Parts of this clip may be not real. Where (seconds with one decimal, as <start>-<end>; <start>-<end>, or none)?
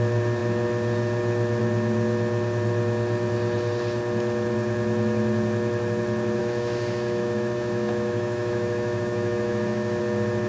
6.4-10.0